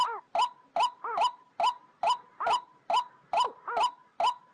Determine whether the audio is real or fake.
real